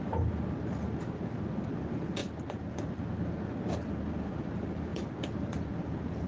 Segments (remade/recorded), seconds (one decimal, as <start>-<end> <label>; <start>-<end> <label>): 0.0-2.2 recorded; 2.2-2.7 remade; 2.7-4.9 recorded; 4.9-6.3 remade